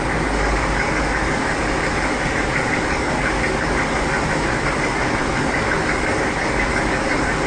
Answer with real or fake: fake